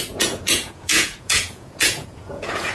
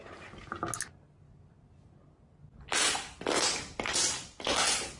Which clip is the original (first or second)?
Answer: second